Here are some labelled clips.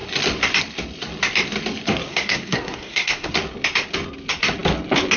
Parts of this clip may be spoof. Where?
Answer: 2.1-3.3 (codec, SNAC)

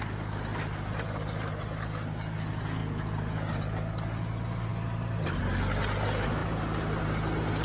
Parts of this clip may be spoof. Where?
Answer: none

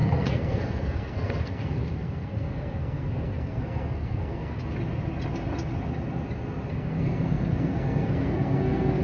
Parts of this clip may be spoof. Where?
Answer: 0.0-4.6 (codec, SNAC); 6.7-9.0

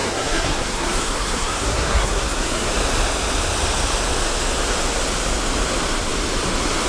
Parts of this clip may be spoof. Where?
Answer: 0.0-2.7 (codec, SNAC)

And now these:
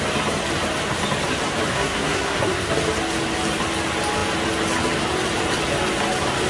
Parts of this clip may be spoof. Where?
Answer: 1.7-2.7 (codec, SNAC)

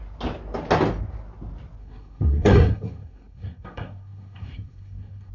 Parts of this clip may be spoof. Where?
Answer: 1.8-5.3 (codec, SNAC)